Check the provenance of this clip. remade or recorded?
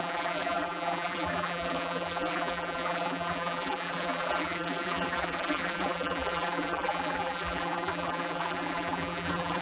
remade